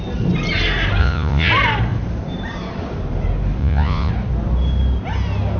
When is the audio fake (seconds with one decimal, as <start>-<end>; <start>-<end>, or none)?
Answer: 1.0-1.5; 3.6-4.1